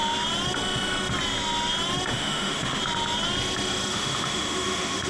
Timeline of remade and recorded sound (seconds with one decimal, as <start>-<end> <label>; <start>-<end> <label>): 0.0-2.1 recorded; 2.1-2.8 remade; 2.8-3.9 recorded; 3.9-5.1 remade